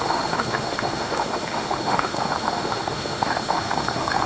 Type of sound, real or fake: fake